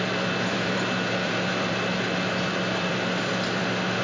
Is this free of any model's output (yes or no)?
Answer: no